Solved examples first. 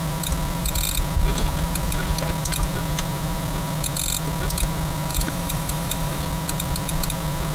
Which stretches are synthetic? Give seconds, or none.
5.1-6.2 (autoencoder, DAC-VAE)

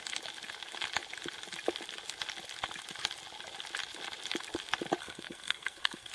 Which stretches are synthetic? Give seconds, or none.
5.0-6.1 (codec, SNAC)

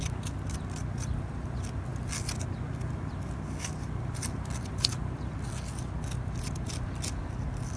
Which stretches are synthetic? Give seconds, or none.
none

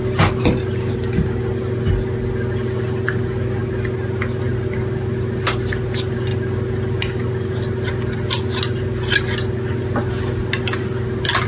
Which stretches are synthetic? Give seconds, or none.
none